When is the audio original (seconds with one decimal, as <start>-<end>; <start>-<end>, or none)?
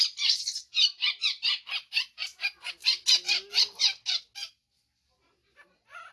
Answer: 0.0-6.1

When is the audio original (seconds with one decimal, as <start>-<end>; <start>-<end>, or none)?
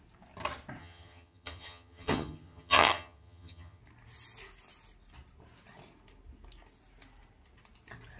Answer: 0.0-0.8; 3.8-8.2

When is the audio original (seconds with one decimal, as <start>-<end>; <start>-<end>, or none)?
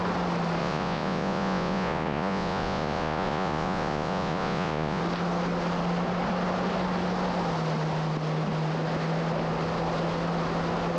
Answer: 0.0-0.6; 5.0-11.0